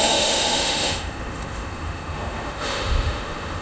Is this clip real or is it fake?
fake